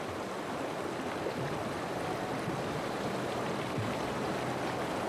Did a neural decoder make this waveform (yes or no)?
no